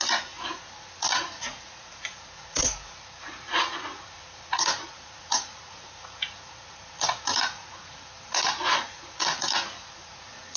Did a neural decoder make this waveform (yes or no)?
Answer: yes